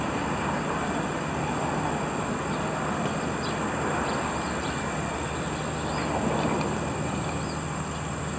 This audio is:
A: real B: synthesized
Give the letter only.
A